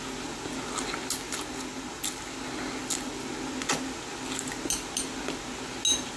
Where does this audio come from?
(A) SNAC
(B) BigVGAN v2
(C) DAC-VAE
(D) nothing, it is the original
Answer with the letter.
D